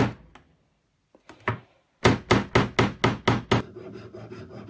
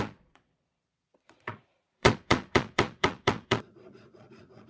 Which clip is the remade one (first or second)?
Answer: second